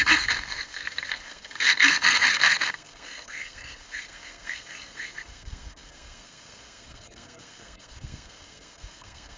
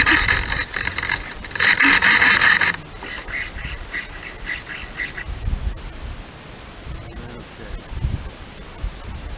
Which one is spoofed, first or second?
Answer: first